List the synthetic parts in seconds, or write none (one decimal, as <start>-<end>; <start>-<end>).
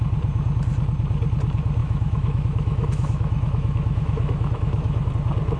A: 1.8-5.1